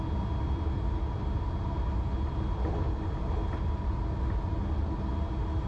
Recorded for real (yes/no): yes